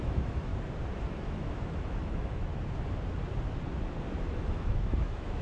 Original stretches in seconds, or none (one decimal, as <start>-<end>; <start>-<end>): 0.5-1.1; 2.5-4.2